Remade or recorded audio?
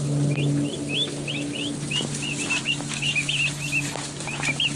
recorded